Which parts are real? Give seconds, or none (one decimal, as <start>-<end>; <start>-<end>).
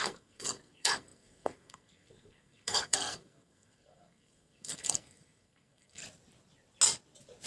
6.0-7.5